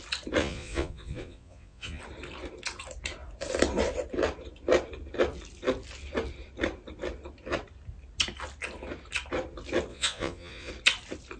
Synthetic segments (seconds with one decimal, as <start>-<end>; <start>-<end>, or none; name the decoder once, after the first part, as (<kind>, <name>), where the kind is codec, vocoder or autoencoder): 0.4-2.0 (vocoder, Vocos); 9.9-10.7